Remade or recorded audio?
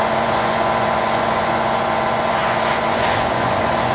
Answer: remade